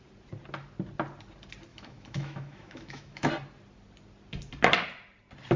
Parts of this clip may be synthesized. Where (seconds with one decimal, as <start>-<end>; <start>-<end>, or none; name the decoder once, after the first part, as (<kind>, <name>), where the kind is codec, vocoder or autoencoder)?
1.7-3.3 (autoencoder, DAC-VAE)